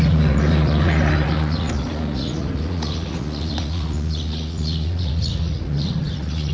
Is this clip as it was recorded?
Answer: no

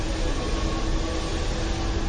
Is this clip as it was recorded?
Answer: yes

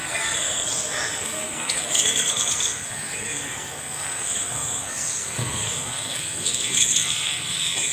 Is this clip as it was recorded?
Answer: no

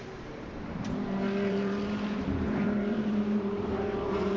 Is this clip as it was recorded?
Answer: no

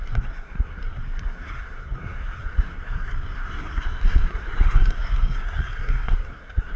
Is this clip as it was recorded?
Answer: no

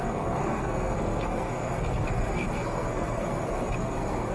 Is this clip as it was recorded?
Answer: no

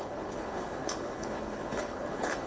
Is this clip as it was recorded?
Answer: no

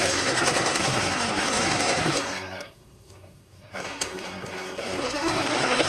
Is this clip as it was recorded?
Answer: no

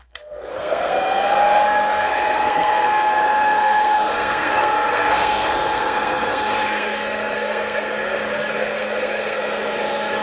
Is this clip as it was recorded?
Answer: no